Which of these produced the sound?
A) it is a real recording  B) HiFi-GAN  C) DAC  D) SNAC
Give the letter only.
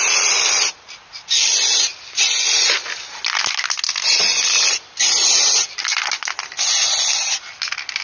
A